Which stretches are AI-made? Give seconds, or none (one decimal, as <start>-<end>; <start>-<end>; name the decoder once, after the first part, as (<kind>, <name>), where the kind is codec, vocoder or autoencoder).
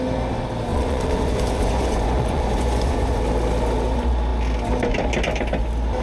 0.7-3.2 (vocoder, Vocos)